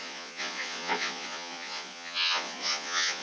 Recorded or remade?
remade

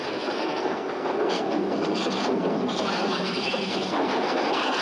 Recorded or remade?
remade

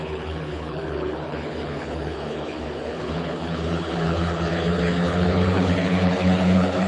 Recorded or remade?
remade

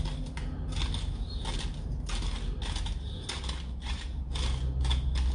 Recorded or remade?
recorded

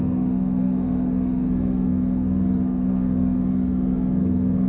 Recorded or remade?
remade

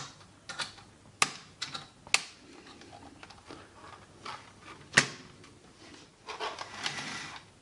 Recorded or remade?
recorded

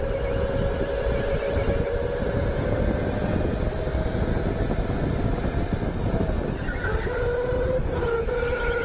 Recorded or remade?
recorded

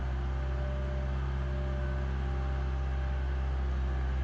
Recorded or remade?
recorded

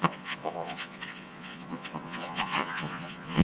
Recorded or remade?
remade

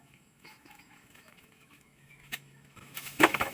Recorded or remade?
remade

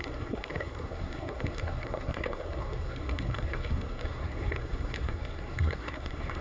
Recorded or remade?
remade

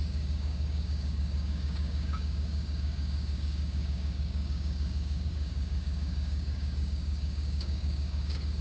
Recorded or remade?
remade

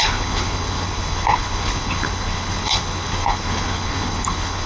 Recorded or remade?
remade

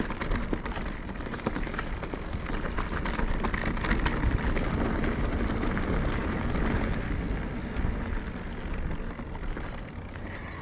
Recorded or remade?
recorded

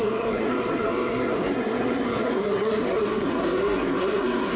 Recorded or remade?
remade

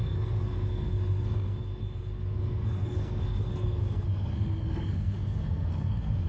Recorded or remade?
remade